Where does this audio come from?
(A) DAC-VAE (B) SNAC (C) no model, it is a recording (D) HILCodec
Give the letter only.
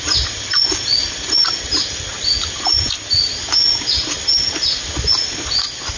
C